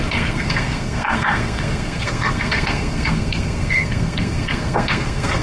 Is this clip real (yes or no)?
no